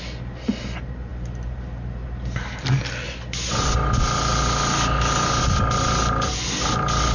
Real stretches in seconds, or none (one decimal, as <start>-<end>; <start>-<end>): 0.0-7.1